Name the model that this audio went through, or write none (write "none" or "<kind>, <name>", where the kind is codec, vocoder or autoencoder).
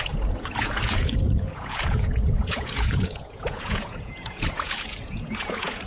vocoder, Vocos